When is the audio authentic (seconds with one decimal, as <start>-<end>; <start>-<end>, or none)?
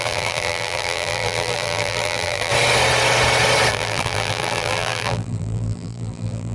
2.5-3.7